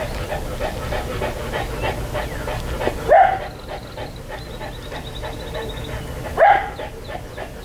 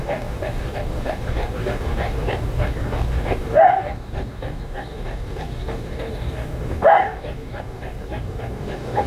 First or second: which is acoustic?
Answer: first